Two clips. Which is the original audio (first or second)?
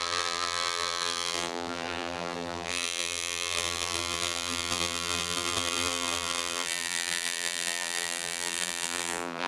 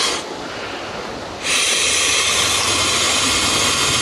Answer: second